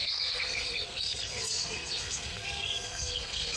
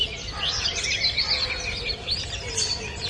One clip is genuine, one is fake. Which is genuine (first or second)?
second